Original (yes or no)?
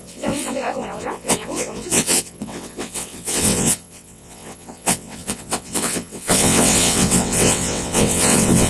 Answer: no